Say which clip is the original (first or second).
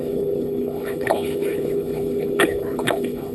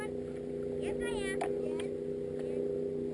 second